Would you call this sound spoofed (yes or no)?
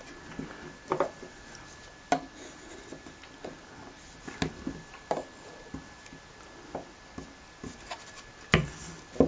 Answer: no